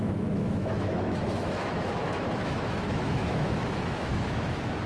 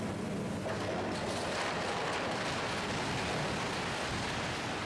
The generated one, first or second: first